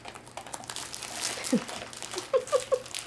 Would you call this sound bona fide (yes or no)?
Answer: yes